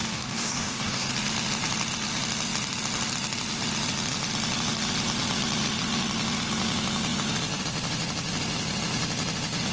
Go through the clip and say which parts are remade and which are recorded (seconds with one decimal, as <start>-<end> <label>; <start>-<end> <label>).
0.0-1.1 remade; 1.1-9.7 recorded